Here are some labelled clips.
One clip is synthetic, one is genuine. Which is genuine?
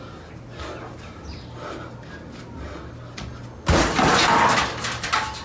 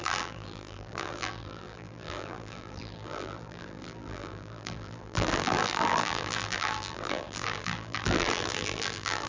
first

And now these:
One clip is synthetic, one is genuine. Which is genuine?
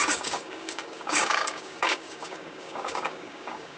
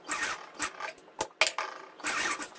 second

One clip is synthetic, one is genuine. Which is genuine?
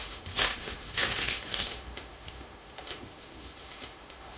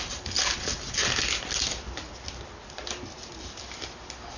second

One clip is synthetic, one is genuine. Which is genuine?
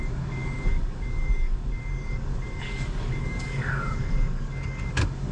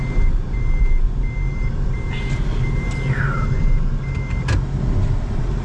second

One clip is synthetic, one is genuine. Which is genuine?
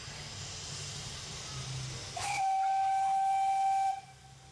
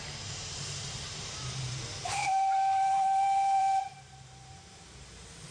first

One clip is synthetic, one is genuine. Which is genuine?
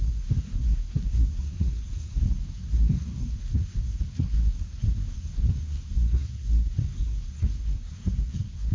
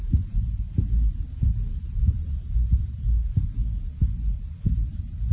second